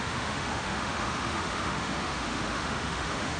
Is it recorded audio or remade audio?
remade